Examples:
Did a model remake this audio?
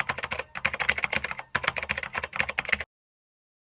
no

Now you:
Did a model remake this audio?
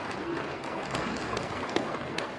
yes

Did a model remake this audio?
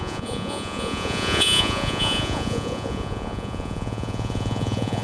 yes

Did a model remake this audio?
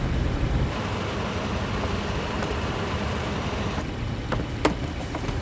no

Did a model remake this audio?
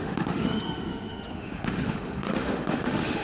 yes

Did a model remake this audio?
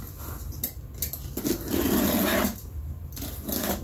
no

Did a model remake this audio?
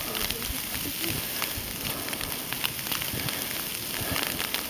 no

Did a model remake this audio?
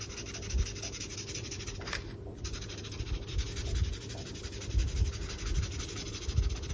no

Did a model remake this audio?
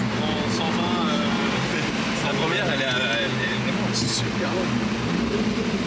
no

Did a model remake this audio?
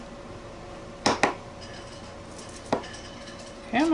no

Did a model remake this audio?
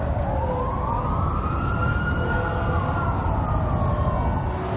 no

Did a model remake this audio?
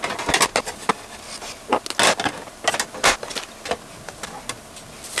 no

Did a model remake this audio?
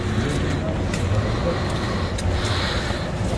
no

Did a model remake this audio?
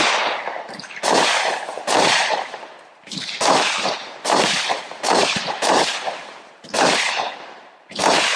yes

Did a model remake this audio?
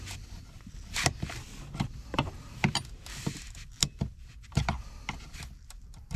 yes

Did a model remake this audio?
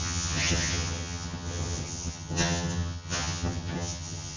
yes